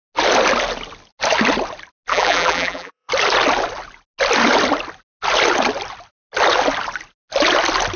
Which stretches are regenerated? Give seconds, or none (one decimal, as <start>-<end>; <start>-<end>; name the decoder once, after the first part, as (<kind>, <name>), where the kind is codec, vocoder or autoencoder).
2.1-3.1 (vocoder, BigVGAN v2)